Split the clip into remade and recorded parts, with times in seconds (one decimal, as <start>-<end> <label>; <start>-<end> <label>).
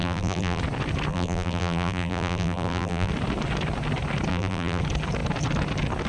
0.0-0.6 remade; 0.6-1.1 recorded; 1.1-3.1 remade; 3.1-4.3 recorded; 4.3-4.8 remade; 4.8-6.1 recorded